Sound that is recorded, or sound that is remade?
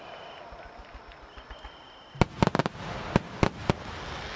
recorded